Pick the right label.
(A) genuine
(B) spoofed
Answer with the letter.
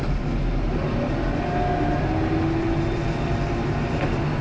A